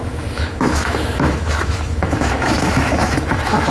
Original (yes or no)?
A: no